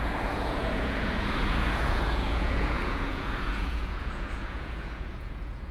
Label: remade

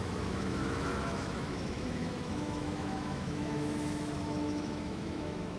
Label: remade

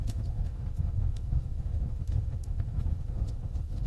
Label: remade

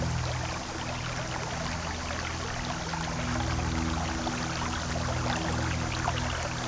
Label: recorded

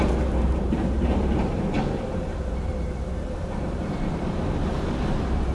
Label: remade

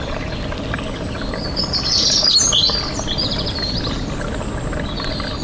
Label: recorded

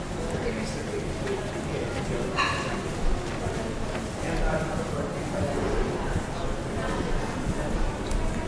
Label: recorded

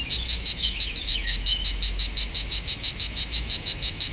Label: remade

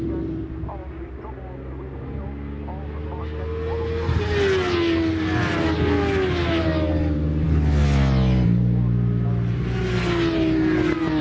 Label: recorded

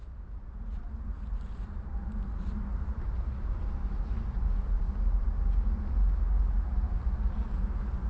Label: recorded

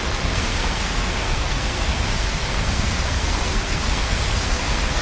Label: remade